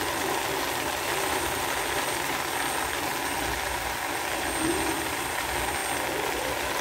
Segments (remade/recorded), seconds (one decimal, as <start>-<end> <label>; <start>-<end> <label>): 0.0-6.8 recorded